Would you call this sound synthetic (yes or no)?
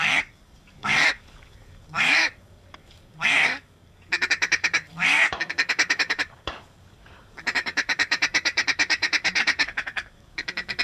yes